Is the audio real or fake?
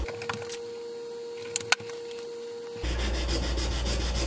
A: real